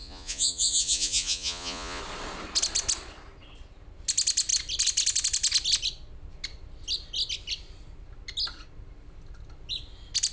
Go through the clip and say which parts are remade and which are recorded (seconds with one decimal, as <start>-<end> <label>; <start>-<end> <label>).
0.0-2.0 remade; 2.0-10.3 recorded